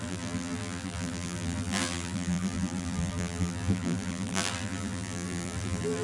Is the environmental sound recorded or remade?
remade